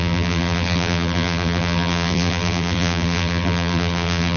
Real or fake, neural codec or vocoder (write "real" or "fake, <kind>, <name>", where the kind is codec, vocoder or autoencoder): fake, vocoder, BigVGAN v2